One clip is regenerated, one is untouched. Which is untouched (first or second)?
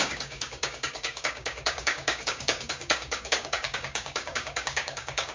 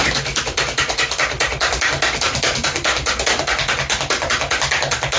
second